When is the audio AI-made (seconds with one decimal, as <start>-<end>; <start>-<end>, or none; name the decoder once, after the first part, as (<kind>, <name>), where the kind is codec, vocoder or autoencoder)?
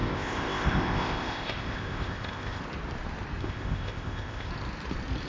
0.0-2.6 (codec, ZipCodec); 3.4-4.5